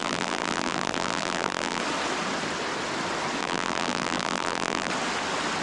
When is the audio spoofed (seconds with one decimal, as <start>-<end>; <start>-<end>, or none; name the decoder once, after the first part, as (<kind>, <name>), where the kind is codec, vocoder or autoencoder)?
0.0-1.8 (vocoder, BigVGAN v2); 3.4-4.9